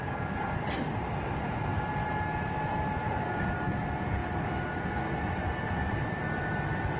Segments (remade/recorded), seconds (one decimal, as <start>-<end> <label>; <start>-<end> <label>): 0.0-7.0 recorded